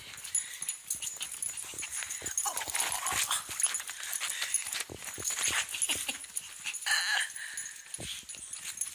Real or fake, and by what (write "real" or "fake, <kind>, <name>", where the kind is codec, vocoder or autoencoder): real